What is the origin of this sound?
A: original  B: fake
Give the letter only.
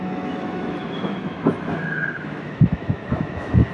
B